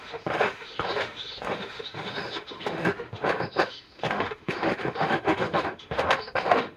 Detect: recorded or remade remade